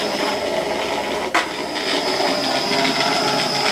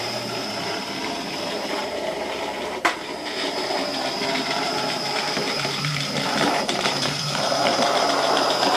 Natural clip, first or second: first